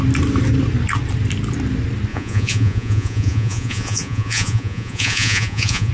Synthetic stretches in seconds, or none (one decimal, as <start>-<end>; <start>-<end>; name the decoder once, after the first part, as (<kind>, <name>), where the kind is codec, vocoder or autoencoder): 2.1-5.9 (vocoder, Vocos)